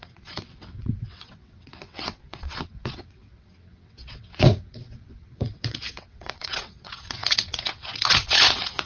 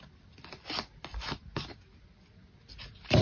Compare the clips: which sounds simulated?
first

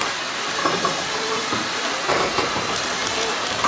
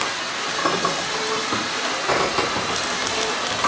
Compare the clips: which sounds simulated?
first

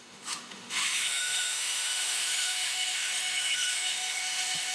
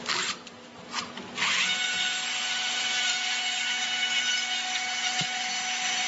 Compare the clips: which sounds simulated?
first